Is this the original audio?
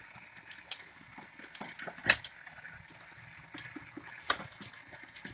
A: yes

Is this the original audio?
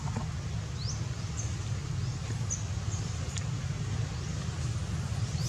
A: yes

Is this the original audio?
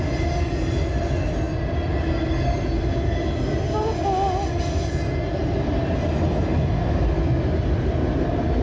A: yes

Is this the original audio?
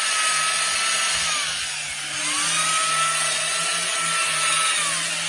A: yes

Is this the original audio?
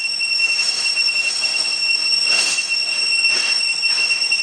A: no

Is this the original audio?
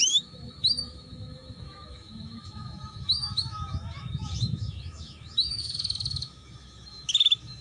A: no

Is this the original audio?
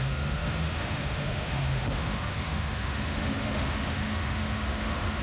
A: no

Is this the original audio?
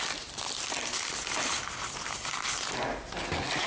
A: yes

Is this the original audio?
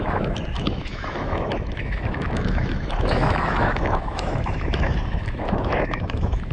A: no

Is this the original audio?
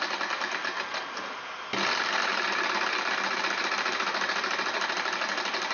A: yes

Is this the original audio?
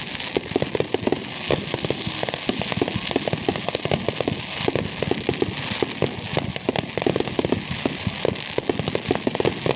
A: yes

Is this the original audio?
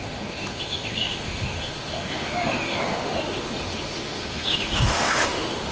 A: no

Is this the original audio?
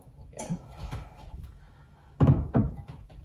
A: no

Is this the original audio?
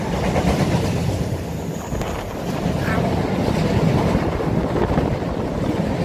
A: yes